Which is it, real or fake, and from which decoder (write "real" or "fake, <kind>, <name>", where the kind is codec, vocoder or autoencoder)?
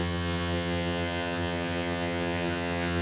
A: fake, vocoder, HiFi-GAN